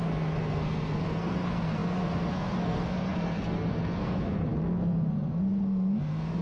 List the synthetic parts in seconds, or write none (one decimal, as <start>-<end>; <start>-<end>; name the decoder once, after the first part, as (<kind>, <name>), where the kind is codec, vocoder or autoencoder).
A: 0.0-6.4 (codec, SNAC)